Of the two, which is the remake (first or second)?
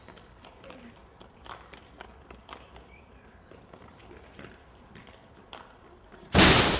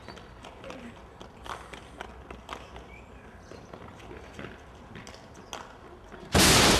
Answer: first